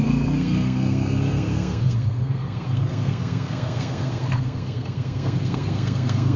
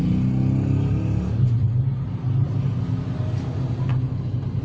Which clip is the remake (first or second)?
first